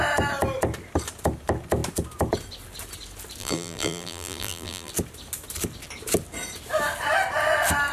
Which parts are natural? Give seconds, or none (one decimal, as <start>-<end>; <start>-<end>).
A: 0.0-3.4; 4.9-7.9